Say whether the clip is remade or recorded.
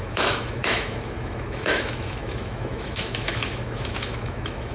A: remade